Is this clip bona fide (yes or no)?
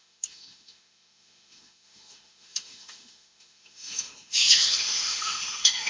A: no